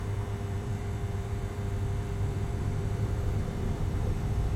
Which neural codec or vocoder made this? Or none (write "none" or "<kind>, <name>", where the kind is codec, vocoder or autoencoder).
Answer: vocoder, BigVGAN v2